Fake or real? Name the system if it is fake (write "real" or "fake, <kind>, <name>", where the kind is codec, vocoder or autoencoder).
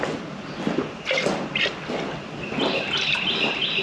real